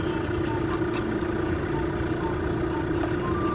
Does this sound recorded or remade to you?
recorded